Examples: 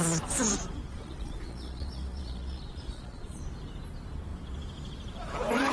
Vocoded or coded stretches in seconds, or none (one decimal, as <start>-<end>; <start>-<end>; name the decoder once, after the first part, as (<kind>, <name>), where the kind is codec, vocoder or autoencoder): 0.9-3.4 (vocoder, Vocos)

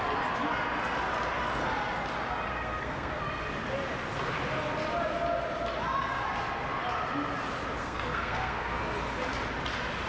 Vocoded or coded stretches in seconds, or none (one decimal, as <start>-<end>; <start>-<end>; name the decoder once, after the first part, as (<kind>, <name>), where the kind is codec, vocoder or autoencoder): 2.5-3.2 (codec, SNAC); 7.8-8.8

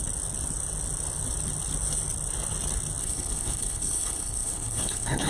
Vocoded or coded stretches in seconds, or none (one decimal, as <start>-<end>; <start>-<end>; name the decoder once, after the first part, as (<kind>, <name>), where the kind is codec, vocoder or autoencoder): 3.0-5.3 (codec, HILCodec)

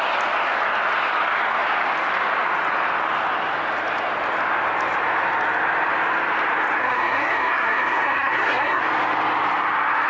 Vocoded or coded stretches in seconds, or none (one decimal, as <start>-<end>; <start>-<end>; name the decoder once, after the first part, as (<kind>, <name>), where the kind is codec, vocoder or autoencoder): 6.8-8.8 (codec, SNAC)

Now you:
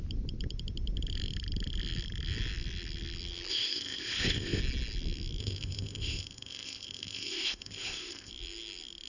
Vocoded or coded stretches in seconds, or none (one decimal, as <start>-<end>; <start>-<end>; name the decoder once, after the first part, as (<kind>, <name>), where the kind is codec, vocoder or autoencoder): 3.5-4.6 (codec, ZipCodec); 5.4-8.3

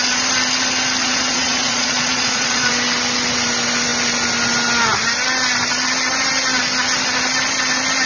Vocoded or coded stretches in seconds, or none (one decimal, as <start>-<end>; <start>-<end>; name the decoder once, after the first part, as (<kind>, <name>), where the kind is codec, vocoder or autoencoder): 1.0-2.7 (vocoder, Vocos)